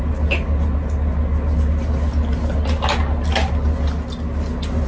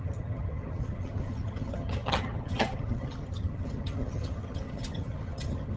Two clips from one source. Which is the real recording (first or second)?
first